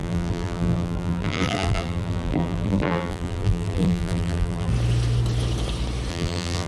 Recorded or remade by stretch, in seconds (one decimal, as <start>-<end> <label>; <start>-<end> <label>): 0.0-4.7 remade; 4.7-6.1 recorded; 6.1-6.7 remade